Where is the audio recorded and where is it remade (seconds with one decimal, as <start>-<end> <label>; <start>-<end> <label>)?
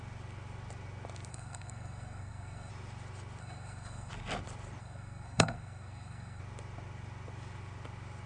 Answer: 0.0-1.3 recorded; 1.3-2.7 remade; 2.7-3.4 recorded; 3.4-4.1 remade; 4.1-4.8 recorded; 4.8-6.4 remade; 6.4-8.3 recorded